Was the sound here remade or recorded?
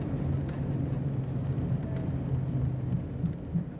recorded